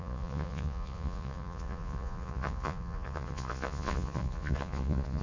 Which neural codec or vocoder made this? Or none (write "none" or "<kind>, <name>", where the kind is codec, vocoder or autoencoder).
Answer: vocoder, Vocos